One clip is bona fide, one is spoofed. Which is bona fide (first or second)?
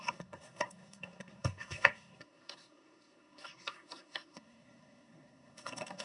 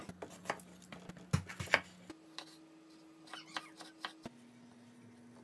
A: second